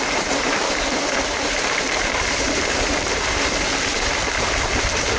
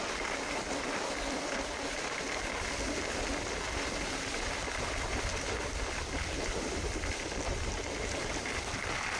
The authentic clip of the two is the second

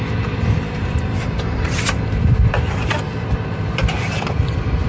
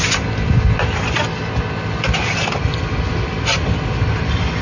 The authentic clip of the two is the second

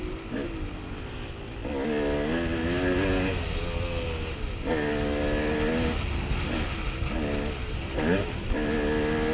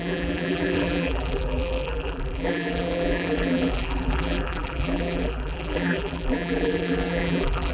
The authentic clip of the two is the first